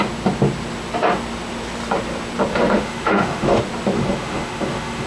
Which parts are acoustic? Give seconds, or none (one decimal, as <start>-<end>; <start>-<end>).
0.0-2.5; 3.6-4.0